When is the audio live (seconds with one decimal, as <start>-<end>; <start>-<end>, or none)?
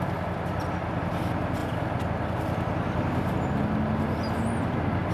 0.0-5.1